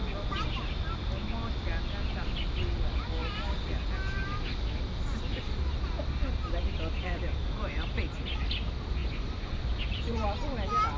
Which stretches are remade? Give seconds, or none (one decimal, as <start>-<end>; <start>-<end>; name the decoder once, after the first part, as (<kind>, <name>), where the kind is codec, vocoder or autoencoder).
9.0-9.7 (vocoder, Vocos)